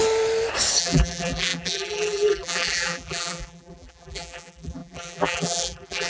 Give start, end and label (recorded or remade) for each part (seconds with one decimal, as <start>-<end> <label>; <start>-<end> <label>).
0.0-0.8 recorded; 0.8-6.1 remade